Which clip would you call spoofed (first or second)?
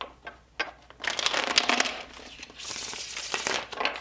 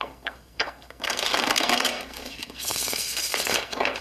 second